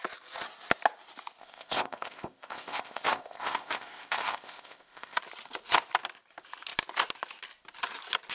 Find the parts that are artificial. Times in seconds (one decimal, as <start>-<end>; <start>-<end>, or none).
1.4-5.2